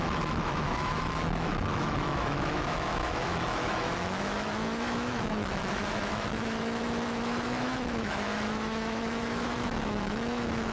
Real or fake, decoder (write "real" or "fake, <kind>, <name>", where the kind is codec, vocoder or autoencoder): fake, autoencoder, DAC-VAE